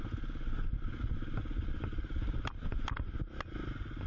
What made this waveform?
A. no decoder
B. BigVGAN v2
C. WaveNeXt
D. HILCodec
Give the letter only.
A